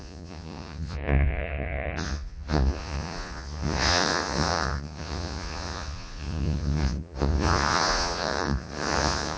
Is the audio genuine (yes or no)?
no